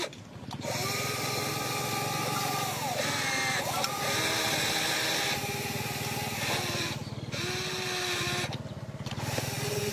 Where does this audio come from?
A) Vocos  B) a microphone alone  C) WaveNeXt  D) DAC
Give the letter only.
B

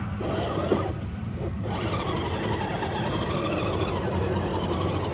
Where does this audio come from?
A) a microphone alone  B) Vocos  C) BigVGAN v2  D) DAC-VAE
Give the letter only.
A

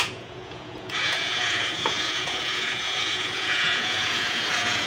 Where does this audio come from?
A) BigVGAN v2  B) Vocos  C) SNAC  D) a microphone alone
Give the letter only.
B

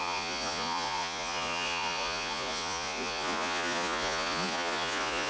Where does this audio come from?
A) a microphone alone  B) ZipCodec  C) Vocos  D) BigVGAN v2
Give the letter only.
C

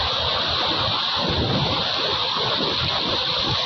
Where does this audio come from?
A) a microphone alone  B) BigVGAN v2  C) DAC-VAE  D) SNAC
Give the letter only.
A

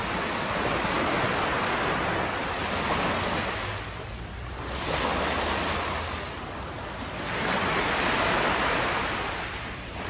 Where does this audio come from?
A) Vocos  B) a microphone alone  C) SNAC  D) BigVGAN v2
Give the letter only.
B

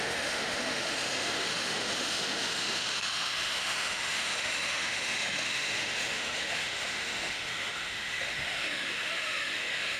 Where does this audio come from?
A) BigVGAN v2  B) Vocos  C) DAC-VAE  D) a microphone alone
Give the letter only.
C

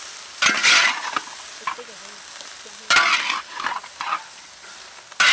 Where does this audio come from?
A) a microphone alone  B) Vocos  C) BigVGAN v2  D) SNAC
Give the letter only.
A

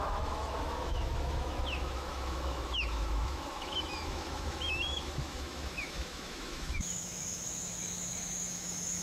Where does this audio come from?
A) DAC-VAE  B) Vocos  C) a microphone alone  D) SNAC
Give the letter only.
A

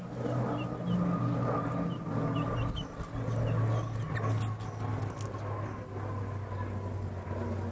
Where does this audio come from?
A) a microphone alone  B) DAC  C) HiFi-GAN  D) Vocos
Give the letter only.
A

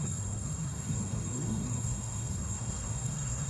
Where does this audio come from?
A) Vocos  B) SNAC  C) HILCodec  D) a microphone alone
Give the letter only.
B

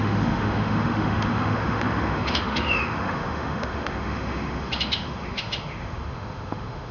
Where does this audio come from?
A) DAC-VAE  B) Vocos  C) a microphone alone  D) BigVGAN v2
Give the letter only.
A